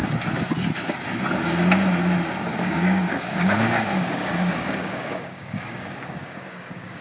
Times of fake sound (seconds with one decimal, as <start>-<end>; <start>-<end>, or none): 2.5-7.0